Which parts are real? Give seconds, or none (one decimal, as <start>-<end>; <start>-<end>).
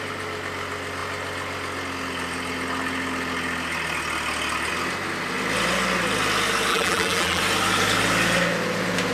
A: 0.0-6.7; 7.4-9.1